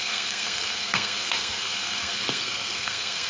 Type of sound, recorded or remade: remade